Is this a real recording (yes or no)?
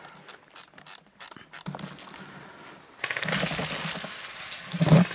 yes